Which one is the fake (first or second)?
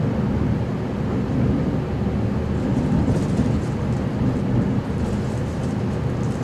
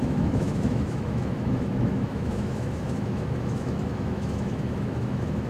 second